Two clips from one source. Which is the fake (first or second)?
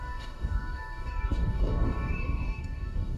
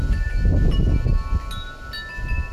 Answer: first